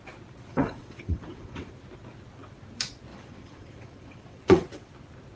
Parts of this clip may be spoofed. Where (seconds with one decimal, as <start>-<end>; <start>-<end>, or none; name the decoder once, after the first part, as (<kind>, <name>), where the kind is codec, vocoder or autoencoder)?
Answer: 0.5-1.7 (vocoder, WaveNeXt); 3.1-4.9